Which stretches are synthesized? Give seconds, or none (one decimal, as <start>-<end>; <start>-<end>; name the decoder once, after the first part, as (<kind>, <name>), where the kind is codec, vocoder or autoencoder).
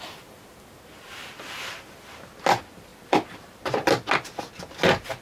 none